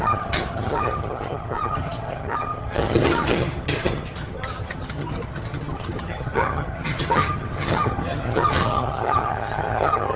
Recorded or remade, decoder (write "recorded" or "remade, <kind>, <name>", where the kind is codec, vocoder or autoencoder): remade, vocoder, HiFi-GAN